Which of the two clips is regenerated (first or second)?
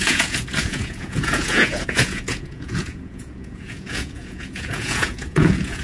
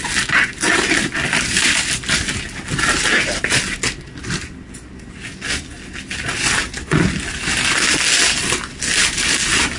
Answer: first